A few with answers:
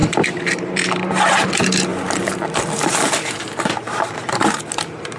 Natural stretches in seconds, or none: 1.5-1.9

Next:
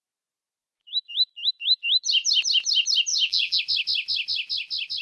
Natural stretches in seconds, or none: 0.0-3.1; 3.6-5.0

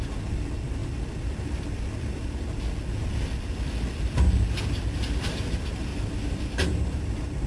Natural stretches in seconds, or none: 0.0-5.9

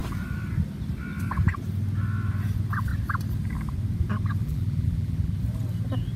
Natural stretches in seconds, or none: 0.0-4.4; 5.3-6.2

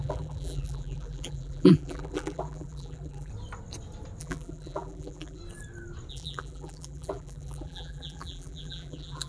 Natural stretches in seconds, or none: 3.3-4.2; 5.4-6.1

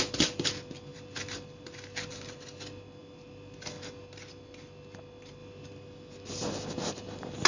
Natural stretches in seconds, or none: 0.0-0.9; 2.1-3.0; 4.0-5.4; 6.3-7.5

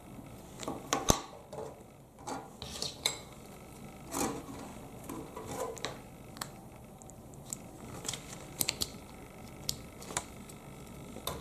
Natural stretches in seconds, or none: 0.0-8.9; 9.4-11.4